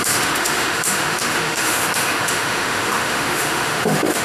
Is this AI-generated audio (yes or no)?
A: yes